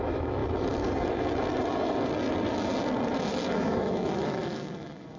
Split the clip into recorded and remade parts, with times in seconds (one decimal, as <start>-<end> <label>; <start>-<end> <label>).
0.0-0.4 remade; 0.4-3.5 recorded; 3.5-5.2 remade